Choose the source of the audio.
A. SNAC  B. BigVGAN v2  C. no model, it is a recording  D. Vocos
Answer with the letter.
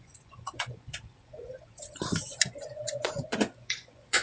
D